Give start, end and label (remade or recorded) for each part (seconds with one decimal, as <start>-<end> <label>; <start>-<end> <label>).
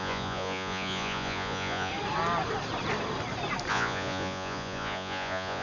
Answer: 0.0-1.9 remade; 1.9-3.7 recorded; 3.7-5.6 remade